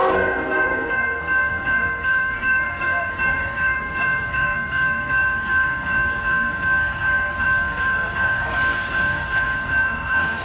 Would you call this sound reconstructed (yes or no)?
yes